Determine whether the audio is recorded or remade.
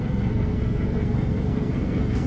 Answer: remade